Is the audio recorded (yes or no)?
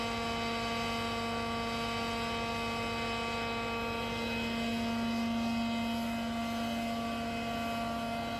yes